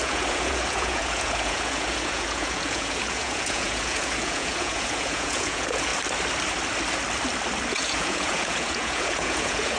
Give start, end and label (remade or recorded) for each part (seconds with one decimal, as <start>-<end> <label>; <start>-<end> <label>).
0.0-5.9 remade; 5.9-7.7 recorded; 7.7-9.8 remade